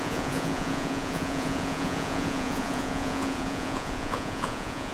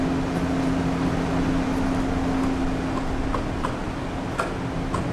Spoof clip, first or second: first